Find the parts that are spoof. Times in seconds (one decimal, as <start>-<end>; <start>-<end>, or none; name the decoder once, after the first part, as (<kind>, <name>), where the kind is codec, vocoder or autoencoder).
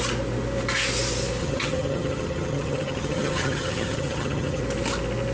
1.4-4.6 (vocoder, HiFi-GAN)